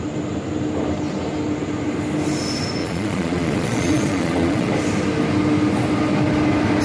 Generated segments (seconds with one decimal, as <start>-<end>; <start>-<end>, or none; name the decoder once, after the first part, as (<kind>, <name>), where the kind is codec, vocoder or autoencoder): 2.8-4.7 (vocoder, Vocos)